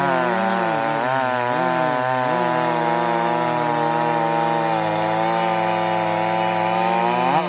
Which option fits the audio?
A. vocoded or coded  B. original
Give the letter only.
B